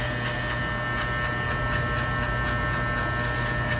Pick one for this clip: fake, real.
real